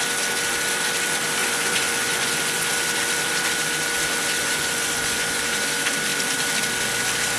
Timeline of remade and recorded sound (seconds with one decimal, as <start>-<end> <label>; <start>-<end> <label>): 0.0-1.4 recorded; 1.4-2.7 remade; 2.7-4.4 recorded; 4.4-5.4 remade; 5.4-7.4 recorded